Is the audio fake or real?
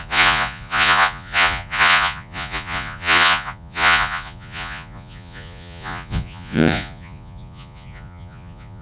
fake